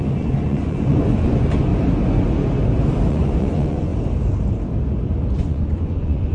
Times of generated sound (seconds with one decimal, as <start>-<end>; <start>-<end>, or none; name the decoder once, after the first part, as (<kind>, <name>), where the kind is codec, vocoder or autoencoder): 0.0-1.7 (vocoder, Vocos); 3.1-3.9; 5.4-6.3